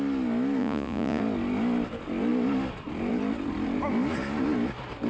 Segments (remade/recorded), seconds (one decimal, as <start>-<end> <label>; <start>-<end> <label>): 0.0-0.6 recorded; 0.6-1.2 remade; 1.2-5.1 recorded